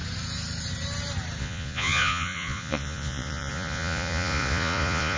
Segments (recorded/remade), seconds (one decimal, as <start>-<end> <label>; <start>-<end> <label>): 0.0-1.4 recorded; 1.4-5.2 remade